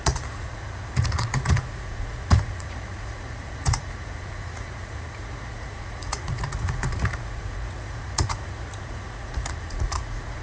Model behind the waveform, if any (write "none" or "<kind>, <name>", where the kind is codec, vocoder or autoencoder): vocoder, Vocos